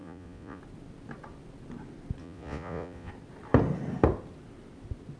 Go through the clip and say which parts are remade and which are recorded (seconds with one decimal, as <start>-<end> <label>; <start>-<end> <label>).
0.0-0.6 remade; 0.6-2.2 recorded; 2.2-3.1 remade; 3.1-5.2 recorded